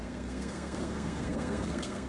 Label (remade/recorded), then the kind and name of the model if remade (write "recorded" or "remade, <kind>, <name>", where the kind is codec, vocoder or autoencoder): remade, codec, SNAC